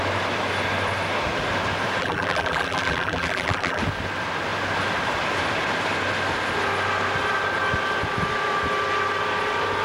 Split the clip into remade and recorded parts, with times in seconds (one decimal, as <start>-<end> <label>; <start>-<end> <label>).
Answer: 0.0-2.0 recorded; 2.0-3.8 remade; 3.8-9.8 recorded